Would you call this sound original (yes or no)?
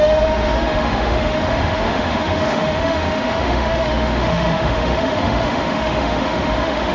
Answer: no